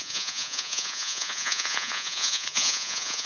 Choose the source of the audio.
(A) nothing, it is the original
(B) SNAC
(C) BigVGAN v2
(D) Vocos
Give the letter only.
D